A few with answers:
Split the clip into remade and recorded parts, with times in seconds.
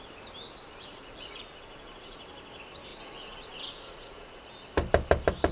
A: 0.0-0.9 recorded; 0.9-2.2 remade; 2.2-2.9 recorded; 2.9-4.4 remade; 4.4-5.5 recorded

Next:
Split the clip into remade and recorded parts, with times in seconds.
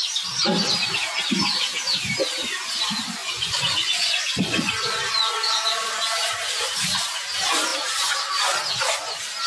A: 0.0-3.2 recorded; 3.2-5.0 remade; 5.0-9.5 recorded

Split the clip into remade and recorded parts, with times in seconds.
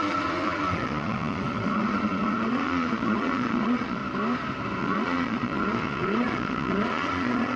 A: 0.0-4.0 remade; 4.0-4.8 recorded; 4.8-7.6 remade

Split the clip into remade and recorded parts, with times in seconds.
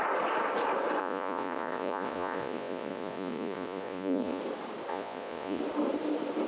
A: 0.0-1.0 recorded; 1.0-4.4 remade; 4.4-4.9 recorded; 4.9-5.6 remade; 5.6-6.5 recorded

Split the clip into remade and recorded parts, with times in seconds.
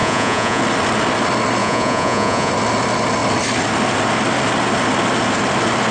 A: 0.0-0.6 remade; 0.6-1.6 recorded; 1.6-2.5 remade; 2.5-5.9 recorded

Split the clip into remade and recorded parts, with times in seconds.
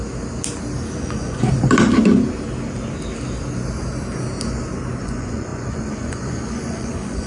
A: 0.0-1.0 recorded; 1.0-1.5 remade; 1.5-5.0 recorded; 5.0-7.3 remade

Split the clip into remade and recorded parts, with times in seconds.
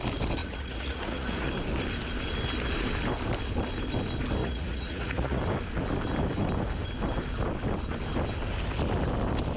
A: 0.0-0.4 recorded; 0.4-1.5 remade; 1.5-4.4 recorded; 4.4-5.4 remade; 5.4-9.6 recorded